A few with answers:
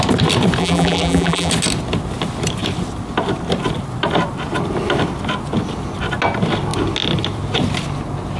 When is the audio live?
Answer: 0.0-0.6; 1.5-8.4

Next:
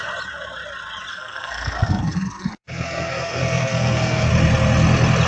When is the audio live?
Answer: 0.0-1.1; 4.3-5.3